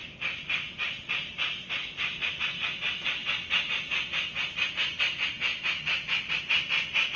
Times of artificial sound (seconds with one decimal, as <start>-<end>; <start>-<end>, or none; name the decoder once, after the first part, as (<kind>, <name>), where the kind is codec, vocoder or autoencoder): 5.5-6.4 (vocoder, BigVGAN v2)

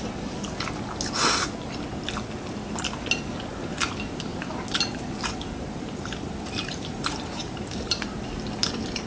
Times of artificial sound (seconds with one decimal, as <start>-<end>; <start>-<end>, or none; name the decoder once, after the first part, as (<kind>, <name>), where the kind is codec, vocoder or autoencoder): 4.9-8.0 (vocoder, BigVGAN v2)

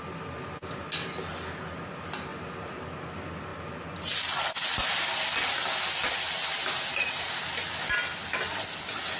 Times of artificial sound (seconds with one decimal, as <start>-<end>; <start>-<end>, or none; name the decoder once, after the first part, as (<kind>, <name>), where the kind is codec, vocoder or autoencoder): 2.3-2.8 (vocoder, BigVGAN v2); 6.6-7.4